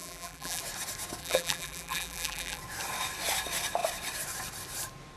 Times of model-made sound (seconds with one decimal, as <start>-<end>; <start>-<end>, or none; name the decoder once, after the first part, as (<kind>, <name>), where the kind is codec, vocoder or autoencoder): 0.0-0.6 (vocoder, BigVGAN v2); 1.2-2.6